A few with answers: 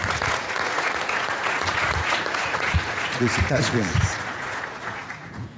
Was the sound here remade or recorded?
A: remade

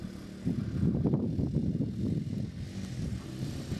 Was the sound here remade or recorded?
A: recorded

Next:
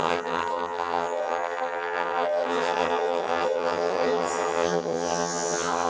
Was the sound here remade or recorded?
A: remade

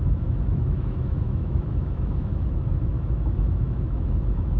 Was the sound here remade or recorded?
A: remade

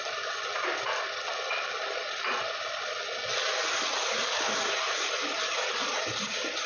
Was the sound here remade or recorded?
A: recorded